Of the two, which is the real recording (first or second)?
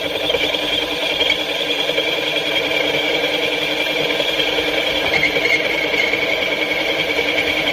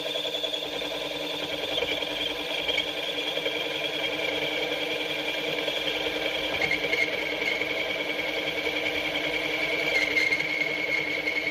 second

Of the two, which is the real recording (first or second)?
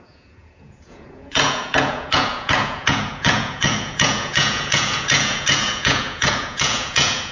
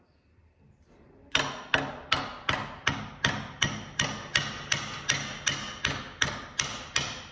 second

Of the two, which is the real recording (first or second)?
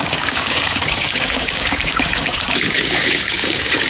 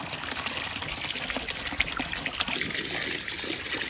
second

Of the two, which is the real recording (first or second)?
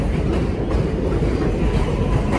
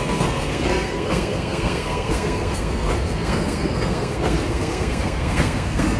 first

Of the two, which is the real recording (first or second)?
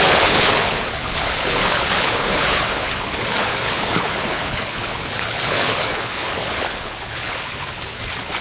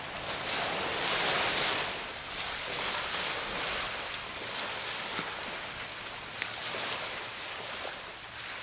second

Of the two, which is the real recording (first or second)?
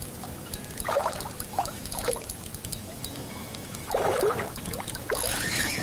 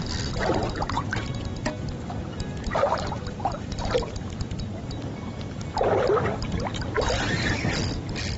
second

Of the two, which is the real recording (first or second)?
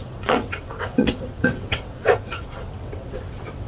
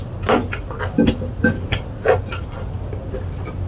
second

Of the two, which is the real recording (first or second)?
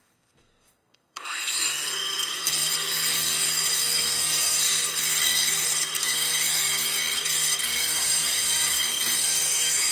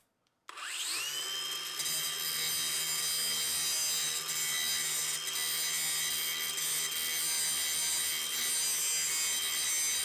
second